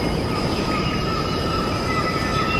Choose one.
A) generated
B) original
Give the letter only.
A